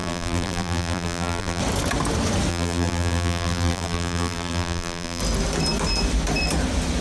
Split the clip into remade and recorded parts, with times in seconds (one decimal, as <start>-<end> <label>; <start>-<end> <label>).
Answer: 0.0-1.6 remade; 1.6-2.5 recorded; 2.5-5.2 remade; 5.2-7.0 recorded